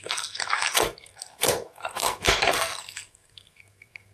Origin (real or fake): fake